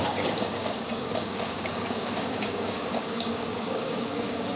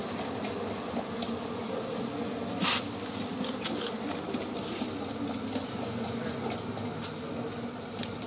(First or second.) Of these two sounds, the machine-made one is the first